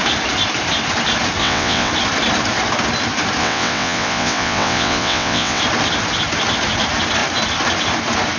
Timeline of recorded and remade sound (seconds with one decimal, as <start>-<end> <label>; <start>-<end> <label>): 0.0-1.4 recorded; 1.4-1.9 remade; 1.9-3.4 recorded; 3.4-5.6 remade; 5.6-8.4 recorded